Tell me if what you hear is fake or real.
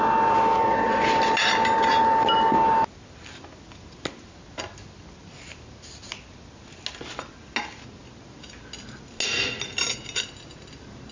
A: real